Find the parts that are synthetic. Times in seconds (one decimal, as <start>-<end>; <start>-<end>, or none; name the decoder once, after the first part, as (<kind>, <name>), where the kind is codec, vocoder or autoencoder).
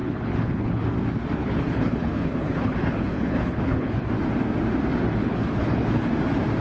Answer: 0.0-0.8 (codec, HILCodec); 1.4-4.1; 5.2-6.1